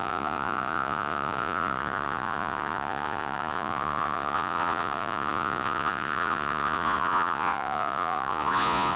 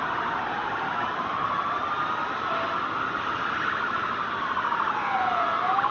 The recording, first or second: second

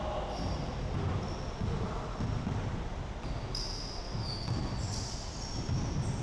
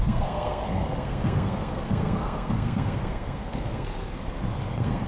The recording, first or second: first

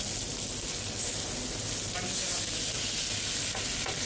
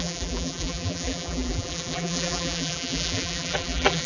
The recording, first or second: first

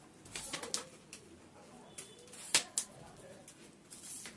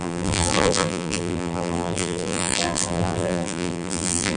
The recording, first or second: first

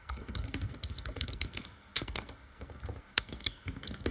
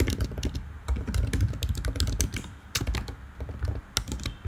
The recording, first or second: second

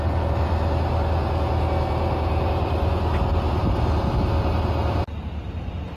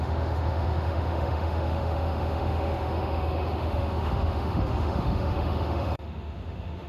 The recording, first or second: first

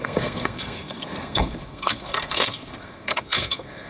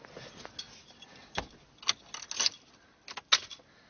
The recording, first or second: second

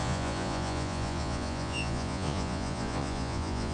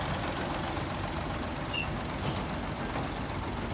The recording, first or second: second